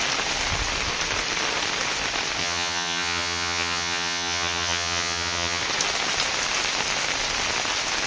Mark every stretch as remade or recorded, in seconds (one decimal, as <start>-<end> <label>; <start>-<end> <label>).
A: 0.0-2.4 recorded; 2.4-5.6 remade; 5.6-8.1 recorded